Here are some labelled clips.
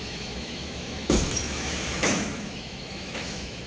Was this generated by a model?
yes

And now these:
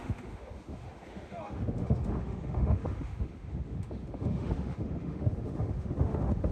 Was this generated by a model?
yes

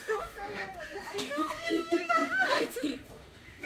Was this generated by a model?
yes